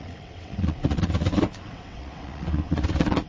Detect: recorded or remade remade